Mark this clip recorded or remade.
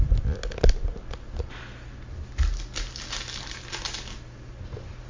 recorded